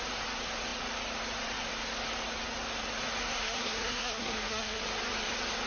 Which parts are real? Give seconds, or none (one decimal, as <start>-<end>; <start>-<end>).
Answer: 0.0-3.2; 4.8-5.7